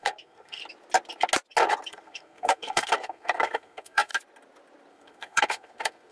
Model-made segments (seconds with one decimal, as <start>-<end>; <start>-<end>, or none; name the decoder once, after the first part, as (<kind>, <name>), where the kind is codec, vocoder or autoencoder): 0.0-0.6 (codec, SNAC); 1.9-4.1; 4.9-6.1